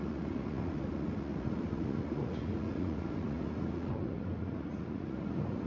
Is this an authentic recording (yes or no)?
no